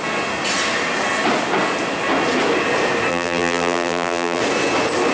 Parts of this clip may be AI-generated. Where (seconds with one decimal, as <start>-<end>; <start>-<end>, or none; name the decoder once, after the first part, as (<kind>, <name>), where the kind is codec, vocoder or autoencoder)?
3.1-4.4 (vocoder, BigVGAN v2)